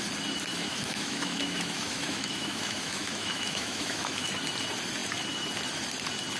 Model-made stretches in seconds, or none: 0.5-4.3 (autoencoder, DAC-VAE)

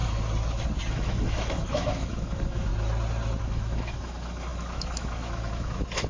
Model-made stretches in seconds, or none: 0.9-2.7 (autoencoder, DAC-VAE); 3.4-6.1

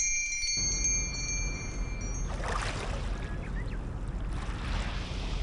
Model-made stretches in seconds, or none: none

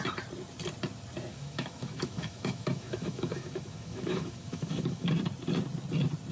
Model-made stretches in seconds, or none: 1.3-5.1 (autoencoder, DAC-VAE)

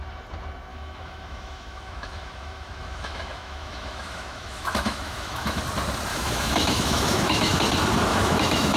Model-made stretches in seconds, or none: 0.7-5.6 (autoencoder, DAC-VAE); 6.1-7.6; 8.1-8.8

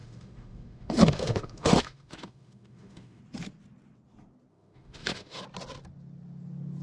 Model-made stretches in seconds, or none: 0.0-3.2 (autoencoder, DAC-VAE); 4.5-5.4